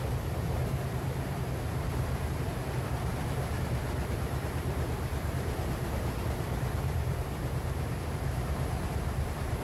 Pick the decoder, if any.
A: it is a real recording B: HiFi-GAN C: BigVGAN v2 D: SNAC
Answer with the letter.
C